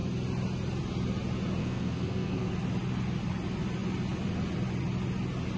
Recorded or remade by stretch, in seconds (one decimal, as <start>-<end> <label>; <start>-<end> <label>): 0.0-1.6 recorded; 1.6-2.5 remade; 2.5-5.6 recorded